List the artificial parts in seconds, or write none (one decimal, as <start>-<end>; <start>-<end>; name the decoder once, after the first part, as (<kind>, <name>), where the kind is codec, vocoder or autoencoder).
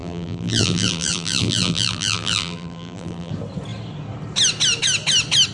0.0-3.3 (vocoder, BigVGAN v2)